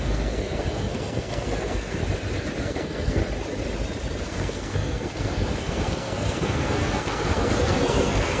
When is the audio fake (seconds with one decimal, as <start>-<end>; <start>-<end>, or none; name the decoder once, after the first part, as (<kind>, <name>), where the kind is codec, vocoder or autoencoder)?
0.0-2.0 (codec, SNAC); 2.6-3.2; 4.2-8.4